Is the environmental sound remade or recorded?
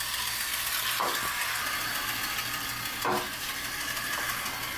recorded